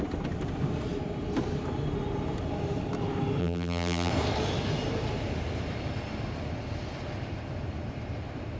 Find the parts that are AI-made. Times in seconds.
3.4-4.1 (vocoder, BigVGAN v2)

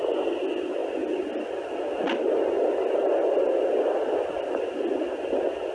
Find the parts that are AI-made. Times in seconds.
none

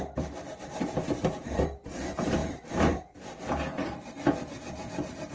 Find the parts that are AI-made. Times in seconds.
none

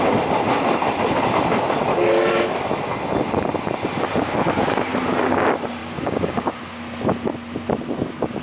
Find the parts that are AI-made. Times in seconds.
1.9-2.5 (codec, DAC); 5.8-6.6